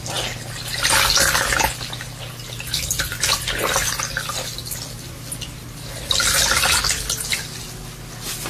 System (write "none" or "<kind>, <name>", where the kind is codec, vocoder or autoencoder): none